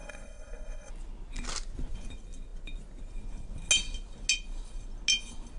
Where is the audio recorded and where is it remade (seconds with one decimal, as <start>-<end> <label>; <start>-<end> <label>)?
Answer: 0.0-0.9 remade; 0.9-5.6 recorded